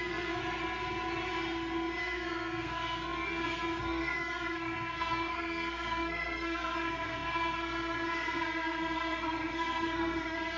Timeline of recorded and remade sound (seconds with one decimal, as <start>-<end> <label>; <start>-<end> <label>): 0.0-0.4 remade; 0.4-2.0 recorded; 2.0-10.6 remade